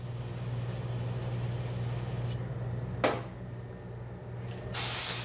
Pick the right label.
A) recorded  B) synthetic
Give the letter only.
A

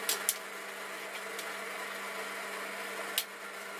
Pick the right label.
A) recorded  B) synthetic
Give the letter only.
A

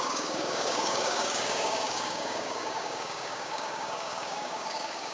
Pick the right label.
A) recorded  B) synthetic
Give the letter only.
B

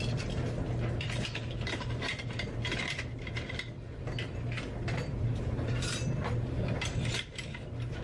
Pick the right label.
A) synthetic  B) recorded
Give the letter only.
B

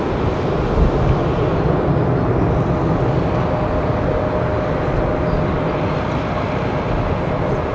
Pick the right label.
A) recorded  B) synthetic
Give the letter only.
A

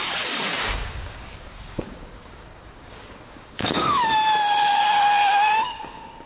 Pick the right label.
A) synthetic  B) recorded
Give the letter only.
A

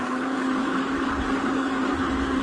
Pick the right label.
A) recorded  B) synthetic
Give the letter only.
B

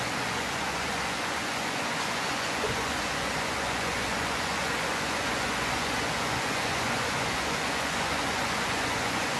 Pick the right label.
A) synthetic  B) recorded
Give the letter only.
A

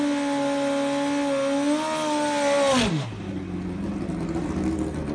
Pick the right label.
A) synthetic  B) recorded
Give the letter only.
B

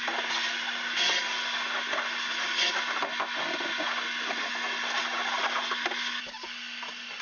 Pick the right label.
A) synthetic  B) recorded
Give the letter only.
B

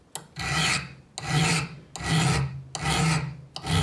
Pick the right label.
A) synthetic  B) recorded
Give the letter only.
B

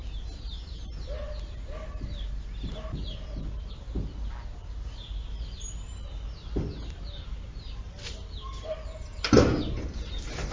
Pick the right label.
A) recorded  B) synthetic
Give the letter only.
A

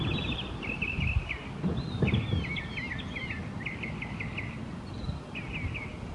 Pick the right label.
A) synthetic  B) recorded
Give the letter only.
B